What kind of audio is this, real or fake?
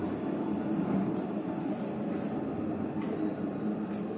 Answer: real